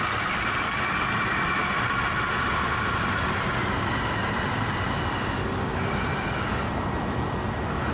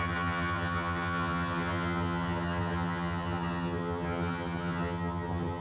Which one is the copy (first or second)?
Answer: second